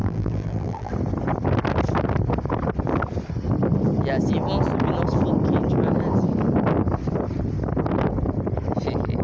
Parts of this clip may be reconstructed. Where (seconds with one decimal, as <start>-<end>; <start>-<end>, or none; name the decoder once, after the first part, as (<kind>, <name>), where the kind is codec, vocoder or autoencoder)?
0.0-0.9 (vocoder, BigVGAN v2)